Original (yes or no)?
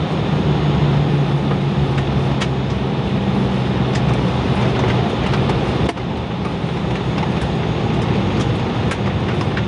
yes